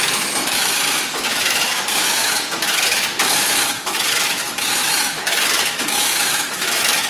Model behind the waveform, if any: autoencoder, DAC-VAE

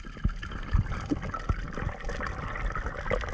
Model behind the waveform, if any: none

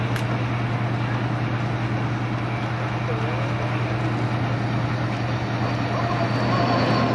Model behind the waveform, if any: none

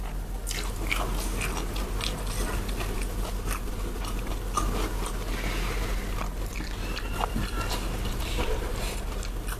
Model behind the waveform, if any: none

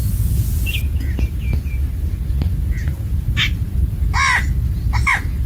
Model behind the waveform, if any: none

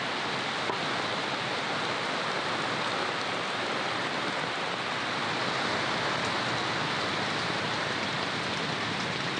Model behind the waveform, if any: none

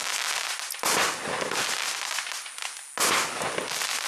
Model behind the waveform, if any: none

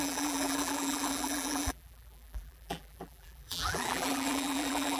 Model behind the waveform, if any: vocoder, BigVGAN v2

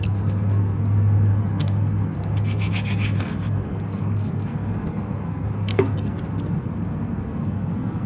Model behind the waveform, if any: codec, SNAC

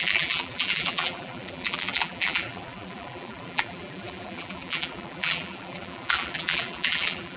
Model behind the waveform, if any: vocoder, BigVGAN v2